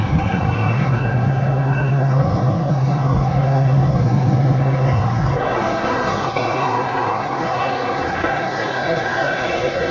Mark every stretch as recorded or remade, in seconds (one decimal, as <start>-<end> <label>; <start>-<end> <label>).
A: 0.0-9.9 remade